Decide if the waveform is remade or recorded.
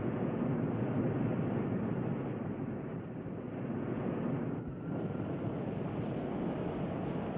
recorded